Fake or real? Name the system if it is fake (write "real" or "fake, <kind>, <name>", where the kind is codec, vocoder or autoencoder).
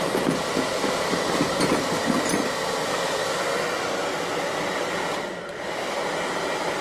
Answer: real